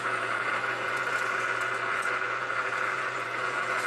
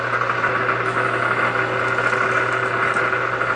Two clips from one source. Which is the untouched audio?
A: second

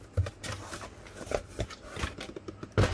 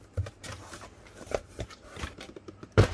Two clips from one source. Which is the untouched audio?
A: first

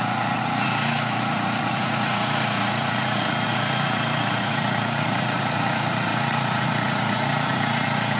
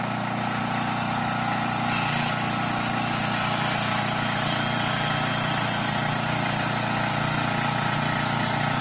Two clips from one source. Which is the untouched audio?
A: second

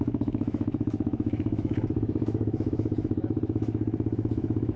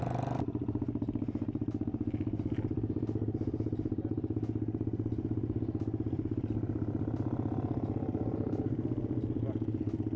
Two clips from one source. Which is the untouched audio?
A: second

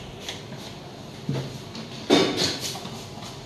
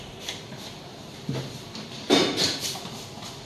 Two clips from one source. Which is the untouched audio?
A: first